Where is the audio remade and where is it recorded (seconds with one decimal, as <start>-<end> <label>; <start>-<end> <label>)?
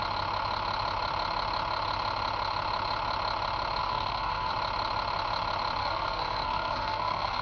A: 0.0-3.8 recorded; 3.8-4.5 remade; 4.5-5.8 recorded; 5.8-7.4 remade